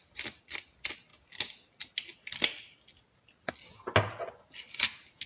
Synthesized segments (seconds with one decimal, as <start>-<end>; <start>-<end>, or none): none